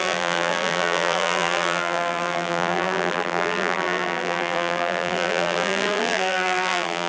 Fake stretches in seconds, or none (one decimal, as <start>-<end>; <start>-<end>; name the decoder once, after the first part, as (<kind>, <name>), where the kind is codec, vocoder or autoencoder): 0.0-7.1 (vocoder, BigVGAN v2)